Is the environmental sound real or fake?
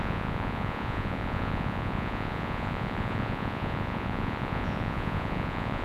fake